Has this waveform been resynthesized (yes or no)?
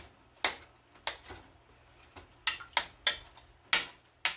no